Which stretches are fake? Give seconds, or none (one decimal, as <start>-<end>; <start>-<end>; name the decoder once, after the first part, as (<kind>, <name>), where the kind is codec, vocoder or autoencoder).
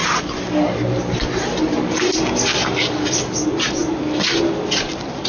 none